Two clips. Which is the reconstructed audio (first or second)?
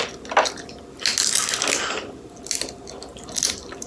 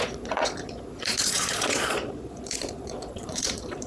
second